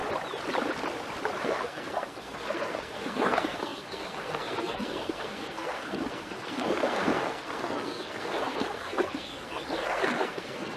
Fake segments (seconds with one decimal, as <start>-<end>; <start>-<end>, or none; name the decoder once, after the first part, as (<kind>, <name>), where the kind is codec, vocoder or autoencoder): 1.4-10.8 (codec, SNAC)